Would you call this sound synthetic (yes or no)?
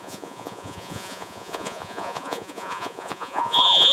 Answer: yes